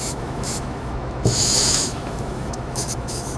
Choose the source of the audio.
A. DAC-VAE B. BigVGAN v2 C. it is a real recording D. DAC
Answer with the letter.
A